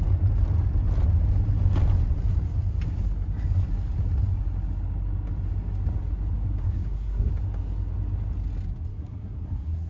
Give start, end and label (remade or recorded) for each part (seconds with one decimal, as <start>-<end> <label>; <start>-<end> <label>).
0.0-6.6 recorded; 6.6-7.3 remade; 7.3-8.9 recorded; 8.9-9.9 remade